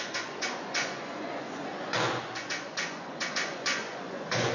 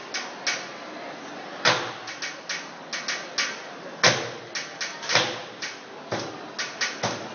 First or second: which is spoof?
first